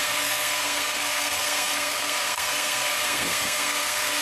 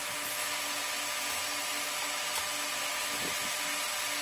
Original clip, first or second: second